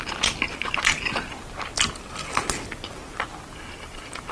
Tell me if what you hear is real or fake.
real